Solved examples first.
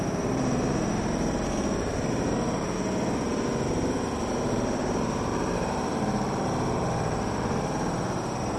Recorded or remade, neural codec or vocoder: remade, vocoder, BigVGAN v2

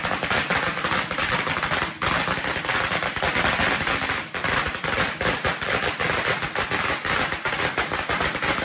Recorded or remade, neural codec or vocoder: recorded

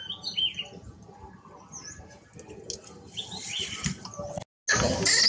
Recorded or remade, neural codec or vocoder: recorded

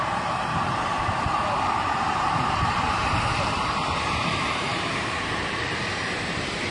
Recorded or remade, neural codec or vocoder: remade, vocoder, BigVGAN v2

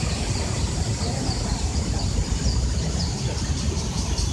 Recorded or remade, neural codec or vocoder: remade, vocoder, BigVGAN v2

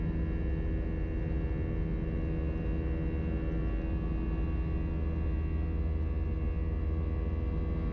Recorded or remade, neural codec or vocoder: recorded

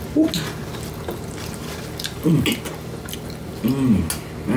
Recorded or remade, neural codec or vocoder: recorded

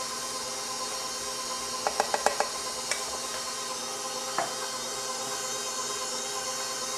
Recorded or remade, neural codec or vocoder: recorded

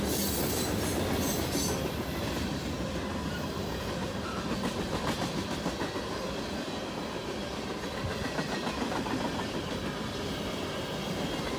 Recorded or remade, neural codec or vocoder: remade, vocoder, BigVGAN v2